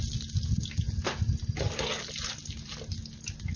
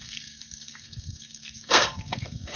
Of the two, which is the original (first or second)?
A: first